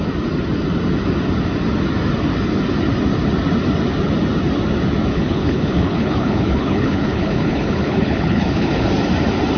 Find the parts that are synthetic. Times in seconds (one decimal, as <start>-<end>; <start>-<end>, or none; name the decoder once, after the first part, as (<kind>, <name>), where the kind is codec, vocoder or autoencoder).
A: 5.1-8.9 (codec, HILCodec)